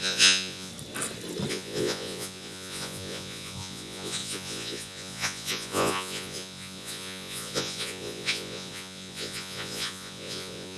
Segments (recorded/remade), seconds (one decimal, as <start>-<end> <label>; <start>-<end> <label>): 0.0-0.7 remade; 0.7-1.5 recorded; 1.5-10.8 remade